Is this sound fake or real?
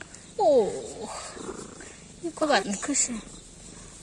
real